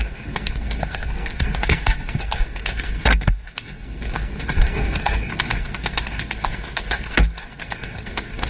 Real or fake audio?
fake